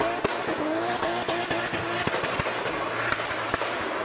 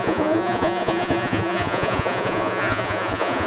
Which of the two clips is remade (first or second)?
second